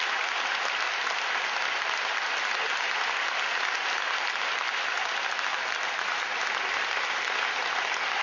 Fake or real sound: real